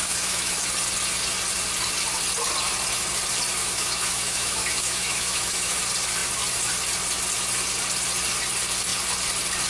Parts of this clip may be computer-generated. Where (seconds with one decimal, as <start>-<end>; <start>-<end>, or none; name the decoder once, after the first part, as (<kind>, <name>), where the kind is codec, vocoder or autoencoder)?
0.0-0.7 (autoencoder, DAC-VAE); 3.6-5.8